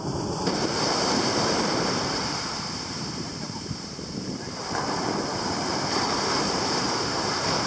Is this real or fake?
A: fake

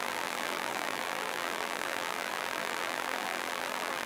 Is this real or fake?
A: fake